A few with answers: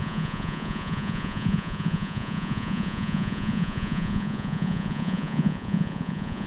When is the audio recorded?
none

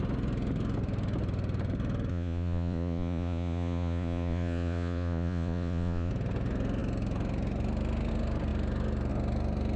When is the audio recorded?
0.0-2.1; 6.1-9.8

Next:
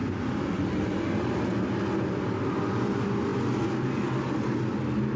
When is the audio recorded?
0.0-5.2

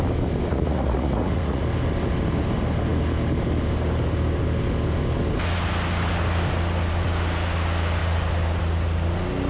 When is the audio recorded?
0.0-0.5; 1.6-9.5

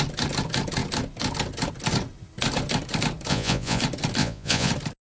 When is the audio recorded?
0.0-3.3; 3.8-4.2; 4.7-5.2

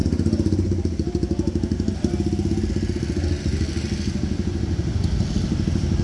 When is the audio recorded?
0.0-6.0

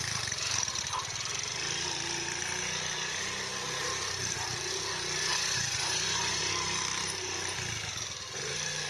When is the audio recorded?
0.0-5.3; 6.5-8.9